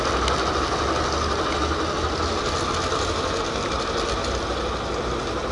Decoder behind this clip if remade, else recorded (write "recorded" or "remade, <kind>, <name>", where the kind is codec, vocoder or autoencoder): recorded